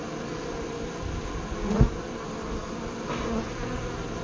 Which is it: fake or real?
real